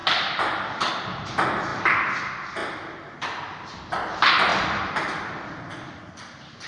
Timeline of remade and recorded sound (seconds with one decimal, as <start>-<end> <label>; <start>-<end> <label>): 0.0-0.9 remade; 0.9-1.7 recorded; 1.7-2.2 remade; 2.2-4.5 recorded; 4.5-6.0 remade; 6.0-6.7 recorded